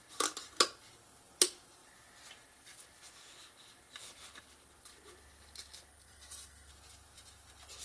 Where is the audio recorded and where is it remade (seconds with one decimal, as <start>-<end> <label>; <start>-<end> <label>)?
0.0-5.9 recorded; 5.9-6.7 remade; 6.7-7.8 recorded